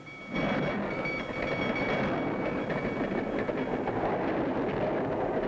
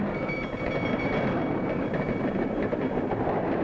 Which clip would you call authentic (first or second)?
first